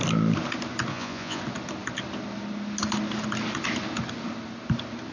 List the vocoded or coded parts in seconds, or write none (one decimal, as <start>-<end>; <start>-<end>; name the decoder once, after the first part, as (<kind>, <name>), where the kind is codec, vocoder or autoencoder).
0.9-1.4 (vocoder, Vocos)